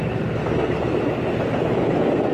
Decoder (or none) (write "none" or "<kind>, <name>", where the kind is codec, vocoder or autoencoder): none